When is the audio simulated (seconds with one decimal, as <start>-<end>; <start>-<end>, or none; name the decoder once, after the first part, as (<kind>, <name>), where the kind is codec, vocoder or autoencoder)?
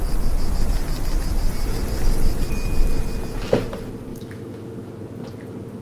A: 4.1-4.9 (autoencoder, DAC-VAE)